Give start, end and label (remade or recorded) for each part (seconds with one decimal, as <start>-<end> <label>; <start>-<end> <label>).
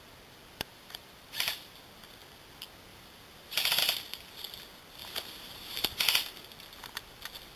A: 0.0-0.7 recorded; 0.7-1.8 remade; 1.8-2.9 recorded; 2.9-3.8 remade; 3.8-5.0 recorded; 5.0-6.0 remade; 6.0-7.6 recorded